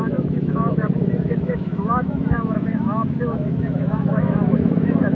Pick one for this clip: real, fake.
fake